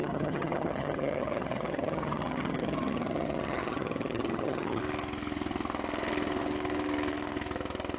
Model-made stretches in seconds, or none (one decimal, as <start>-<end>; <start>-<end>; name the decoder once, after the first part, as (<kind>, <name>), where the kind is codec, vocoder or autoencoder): 0.0-4.8 (vocoder, HiFi-GAN)